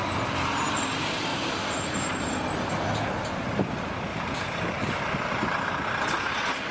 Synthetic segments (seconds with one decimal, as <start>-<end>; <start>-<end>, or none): 1.3-2.2; 4.1-5.0